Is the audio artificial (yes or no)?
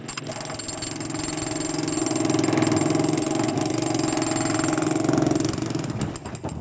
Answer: no